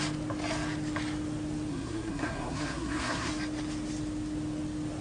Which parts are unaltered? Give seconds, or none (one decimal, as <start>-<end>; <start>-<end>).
0.0-1.7; 3.3-5.0